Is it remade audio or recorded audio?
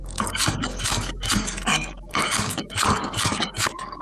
remade